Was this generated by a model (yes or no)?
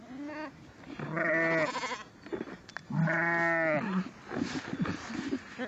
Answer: no